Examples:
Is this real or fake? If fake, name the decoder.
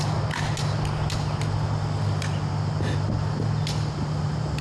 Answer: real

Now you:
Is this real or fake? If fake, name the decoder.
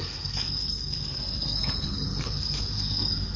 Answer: fake, codec, SNAC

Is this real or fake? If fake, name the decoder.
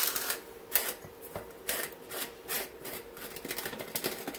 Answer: real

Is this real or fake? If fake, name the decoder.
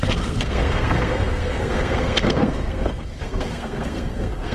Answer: fake, codec, SNAC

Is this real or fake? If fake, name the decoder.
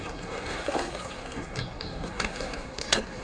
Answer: fake, codec, SNAC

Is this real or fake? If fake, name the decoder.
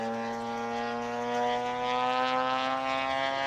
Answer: real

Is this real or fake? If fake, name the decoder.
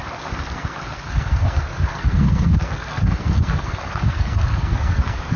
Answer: fake, codec, SNAC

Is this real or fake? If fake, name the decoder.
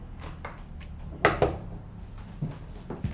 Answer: real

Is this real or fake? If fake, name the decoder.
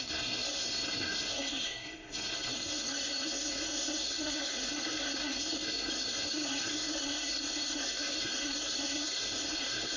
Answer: fake, codec, SNAC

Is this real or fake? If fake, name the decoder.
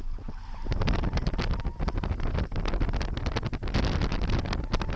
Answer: real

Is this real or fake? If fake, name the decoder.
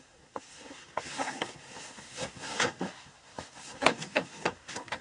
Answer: fake, codec, SNAC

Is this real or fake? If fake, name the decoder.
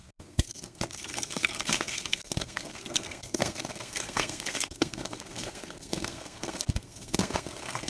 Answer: fake, codec, SNAC